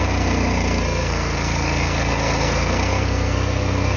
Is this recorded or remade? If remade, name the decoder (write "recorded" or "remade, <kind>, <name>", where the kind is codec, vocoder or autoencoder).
remade, codec, SNAC